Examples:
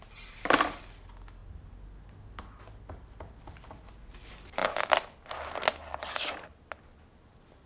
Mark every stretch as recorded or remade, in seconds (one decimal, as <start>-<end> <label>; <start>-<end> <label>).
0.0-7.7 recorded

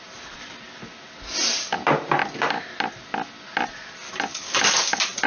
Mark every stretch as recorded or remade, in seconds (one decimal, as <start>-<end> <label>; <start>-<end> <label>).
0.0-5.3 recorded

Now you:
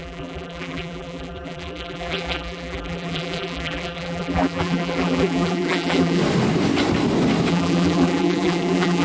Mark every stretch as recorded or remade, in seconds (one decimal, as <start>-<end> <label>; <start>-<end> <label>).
0.0-6.2 remade; 6.2-7.5 recorded; 7.5-9.0 remade

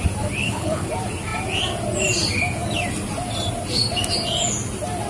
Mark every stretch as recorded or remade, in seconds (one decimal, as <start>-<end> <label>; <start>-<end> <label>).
0.0-0.4 recorded; 0.4-0.9 remade; 0.9-5.1 recorded

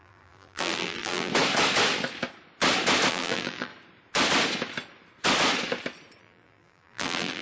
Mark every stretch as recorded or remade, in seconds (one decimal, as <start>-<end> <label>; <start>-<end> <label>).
0.0-1.3 remade; 1.3-3.1 recorded; 3.1-3.7 remade; 3.7-6.2 recorded; 6.2-7.4 remade

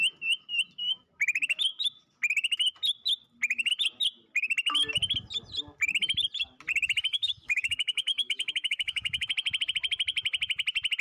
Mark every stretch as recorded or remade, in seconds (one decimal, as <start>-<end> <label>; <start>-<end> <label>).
0.0-7.1 recorded; 7.1-9.3 remade; 9.3-11.0 recorded